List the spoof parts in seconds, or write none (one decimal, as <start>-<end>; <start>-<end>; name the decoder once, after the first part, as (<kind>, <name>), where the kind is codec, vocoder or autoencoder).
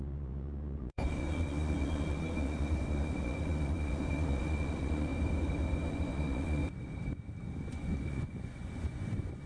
0.0-5.1 (vocoder, Vocos); 5.9-6.6; 7.6-9.5